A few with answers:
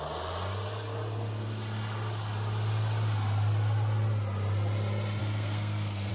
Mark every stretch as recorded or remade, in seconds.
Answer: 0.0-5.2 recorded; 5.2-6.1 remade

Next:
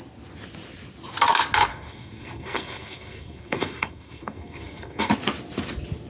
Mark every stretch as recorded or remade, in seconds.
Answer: 0.0-1.7 recorded; 1.7-5.1 remade; 5.1-6.1 recorded

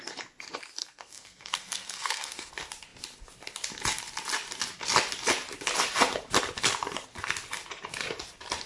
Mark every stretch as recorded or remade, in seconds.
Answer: 0.0-0.8 recorded; 0.8-2.5 remade; 2.5-8.7 recorded

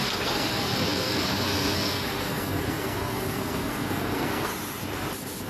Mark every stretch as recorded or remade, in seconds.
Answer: 0.0-4.5 remade; 4.5-5.5 recorded

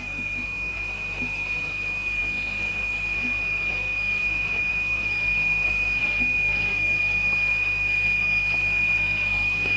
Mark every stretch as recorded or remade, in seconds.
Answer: 0.0-9.8 remade

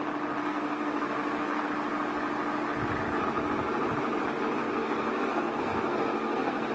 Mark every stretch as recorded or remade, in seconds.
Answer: 0.0-0.5 recorded; 0.5-1.7 remade; 1.7-4.6 recorded; 4.6-6.7 remade

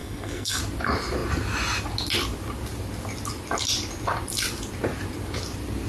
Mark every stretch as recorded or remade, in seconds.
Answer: 0.0-0.6 remade; 0.6-5.9 recorded

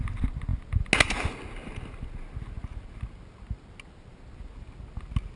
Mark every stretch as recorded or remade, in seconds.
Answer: 0.0-5.4 recorded